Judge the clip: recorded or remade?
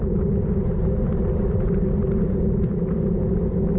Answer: recorded